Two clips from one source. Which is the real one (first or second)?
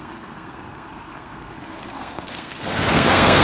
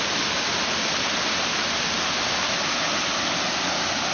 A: second